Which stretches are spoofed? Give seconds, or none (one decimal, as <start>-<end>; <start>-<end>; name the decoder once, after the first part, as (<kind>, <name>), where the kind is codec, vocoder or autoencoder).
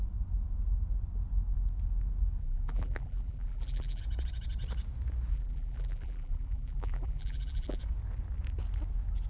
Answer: 2.4-4.0 (vocoder, BigVGAN v2); 5.3-7.8